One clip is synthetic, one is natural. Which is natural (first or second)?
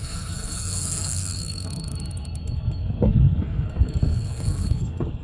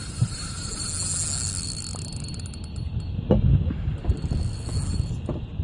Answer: second